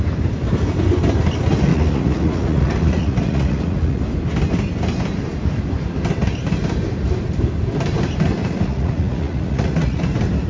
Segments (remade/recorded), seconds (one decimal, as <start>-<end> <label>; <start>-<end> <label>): 0.0-1.7 recorded; 1.7-4.0 remade; 4.0-8.4 recorded; 8.4-10.0 remade; 10.0-10.5 recorded